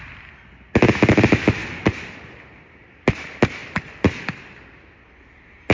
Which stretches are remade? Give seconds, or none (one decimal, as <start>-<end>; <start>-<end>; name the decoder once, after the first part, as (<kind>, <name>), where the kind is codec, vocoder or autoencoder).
1.6-2.4 (vocoder, BigVGAN v2); 3.6-4.3